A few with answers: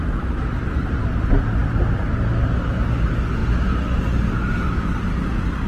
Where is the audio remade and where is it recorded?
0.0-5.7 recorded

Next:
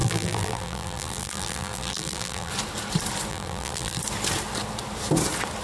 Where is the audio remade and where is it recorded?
0.0-2.5 remade; 2.5-3.3 recorded; 3.3-4.0 remade; 4.0-5.6 recorded

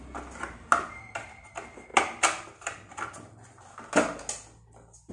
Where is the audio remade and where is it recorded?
0.0-5.1 recorded

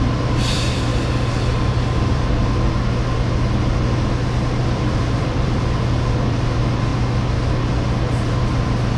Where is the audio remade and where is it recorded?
0.0-0.9 remade; 0.9-1.7 recorded; 1.7-2.4 remade; 2.4-4.6 recorded; 4.6-6.9 remade; 6.9-8.4 recorded; 8.4-9.0 remade

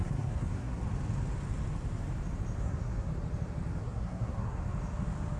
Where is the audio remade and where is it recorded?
0.0-0.8 remade; 0.8-2.6 recorded; 2.6-3.1 remade; 3.1-3.8 recorded; 3.8-4.6 remade; 4.6-5.4 recorded